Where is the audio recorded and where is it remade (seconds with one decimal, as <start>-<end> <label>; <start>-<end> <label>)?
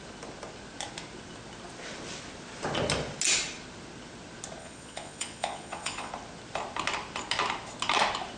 0.0-4.6 recorded; 4.6-6.1 remade; 6.1-8.4 recorded